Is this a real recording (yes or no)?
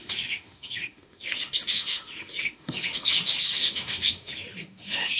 no